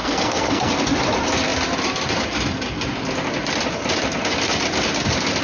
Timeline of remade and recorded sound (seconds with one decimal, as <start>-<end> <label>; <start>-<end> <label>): 0.0-0.7 remade; 0.7-5.4 recorded